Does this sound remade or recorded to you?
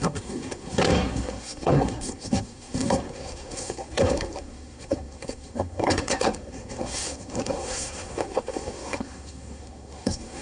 remade